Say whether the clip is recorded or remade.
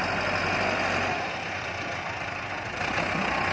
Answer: recorded